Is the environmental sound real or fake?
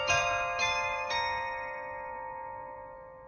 fake